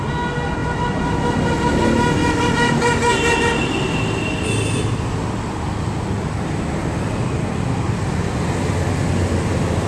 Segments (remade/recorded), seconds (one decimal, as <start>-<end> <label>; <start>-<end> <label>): 0.0-9.9 recorded